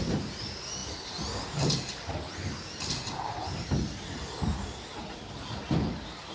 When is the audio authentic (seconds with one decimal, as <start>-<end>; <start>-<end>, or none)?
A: 0.0-6.3